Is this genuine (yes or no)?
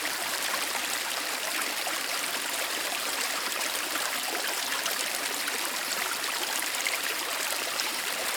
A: no